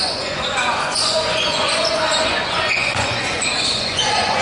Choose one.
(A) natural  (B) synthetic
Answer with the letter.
B